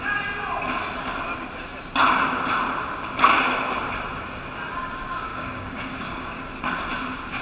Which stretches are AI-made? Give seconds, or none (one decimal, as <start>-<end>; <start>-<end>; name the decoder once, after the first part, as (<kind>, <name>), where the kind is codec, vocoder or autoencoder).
5.3-6.4 (codec, DAC)